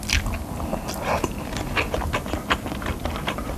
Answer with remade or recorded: recorded